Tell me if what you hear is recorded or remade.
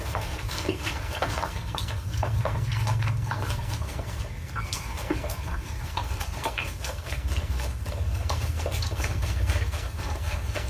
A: remade